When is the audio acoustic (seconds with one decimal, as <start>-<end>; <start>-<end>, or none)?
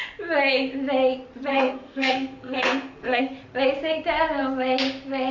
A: 0.0-1.5; 3.2-5.3